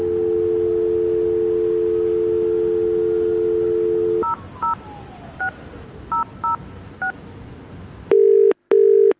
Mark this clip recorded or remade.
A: recorded